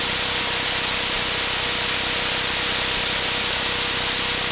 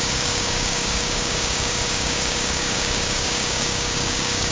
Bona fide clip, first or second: first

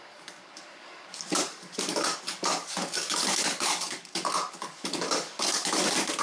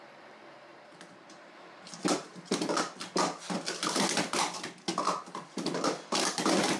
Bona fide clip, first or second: second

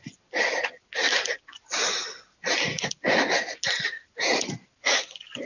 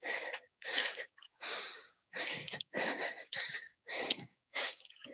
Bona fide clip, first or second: first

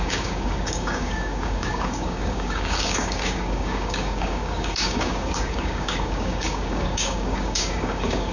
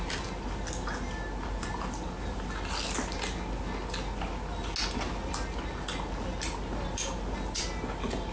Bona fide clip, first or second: second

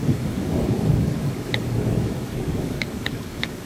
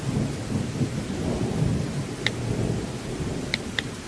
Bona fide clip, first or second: second